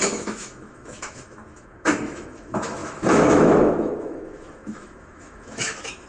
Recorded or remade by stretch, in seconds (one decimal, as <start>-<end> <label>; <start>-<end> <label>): 0.0-6.1 remade